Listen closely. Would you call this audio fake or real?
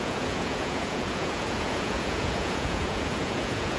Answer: fake